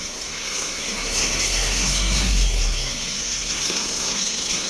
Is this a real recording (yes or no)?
no